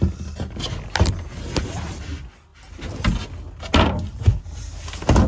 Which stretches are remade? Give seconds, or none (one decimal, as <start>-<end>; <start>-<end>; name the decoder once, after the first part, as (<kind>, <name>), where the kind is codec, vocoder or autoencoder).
none